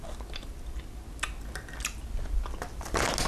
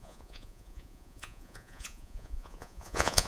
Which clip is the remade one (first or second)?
second